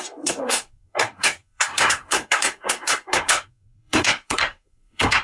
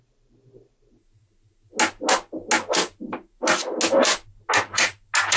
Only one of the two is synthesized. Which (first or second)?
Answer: first